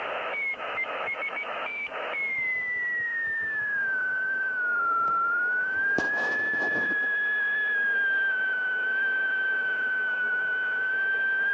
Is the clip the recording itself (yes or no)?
no